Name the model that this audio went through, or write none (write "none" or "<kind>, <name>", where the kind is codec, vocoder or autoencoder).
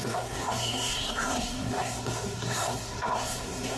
codec, SNAC